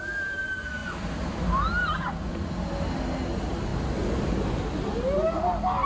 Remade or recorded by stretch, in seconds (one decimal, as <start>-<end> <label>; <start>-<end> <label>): 0.0-5.8 recorded